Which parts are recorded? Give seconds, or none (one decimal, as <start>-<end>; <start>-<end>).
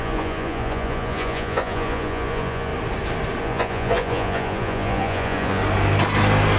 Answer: 2.7-3.4; 5.6-6.6